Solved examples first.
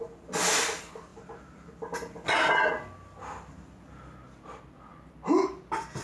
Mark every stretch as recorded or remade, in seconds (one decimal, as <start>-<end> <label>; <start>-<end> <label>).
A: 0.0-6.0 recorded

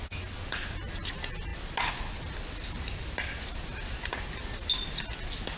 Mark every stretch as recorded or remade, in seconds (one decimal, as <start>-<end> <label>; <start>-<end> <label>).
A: 0.0-5.6 recorded

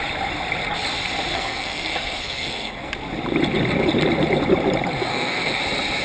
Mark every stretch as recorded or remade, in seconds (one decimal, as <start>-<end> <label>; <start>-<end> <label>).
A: 0.0-1.3 recorded; 1.3-2.9 remade; 2.9-5.1 recorded; 5.1-5.6 remade; 5.6-6.0 recorded

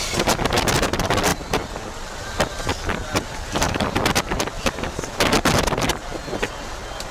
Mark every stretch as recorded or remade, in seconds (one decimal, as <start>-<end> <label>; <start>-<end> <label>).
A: 0.0-1.3 recorded; 1.3-5.1 remade; 5.1-7.1 recorded

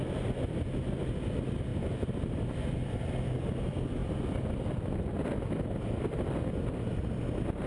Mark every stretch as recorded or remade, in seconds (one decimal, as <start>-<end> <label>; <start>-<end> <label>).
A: 0.0-7.7 recorded

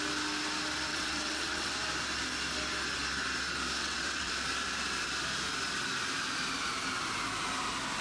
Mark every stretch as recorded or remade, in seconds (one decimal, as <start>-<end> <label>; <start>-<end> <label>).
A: 0.0-0.9 recorded; 0.9-1.7 remade; 1.7-3.8 recorded; 3.8-4.3 remade; 4.3-8.0 recorded

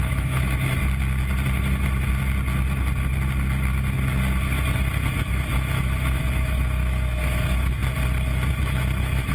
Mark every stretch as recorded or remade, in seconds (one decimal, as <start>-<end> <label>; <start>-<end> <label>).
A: 0.0-0.8 remade; 0.8-5.1 recorded; 5.1-7.8 remade; 7.8-8.5 recorded; 8.5-9.3 remade

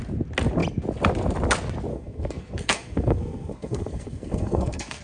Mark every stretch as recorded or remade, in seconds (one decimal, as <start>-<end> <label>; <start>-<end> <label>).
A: 0.0-1.9 recorded; 1.9-5.0 remade